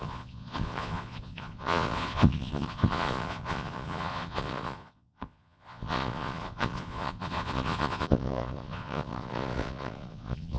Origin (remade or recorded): remade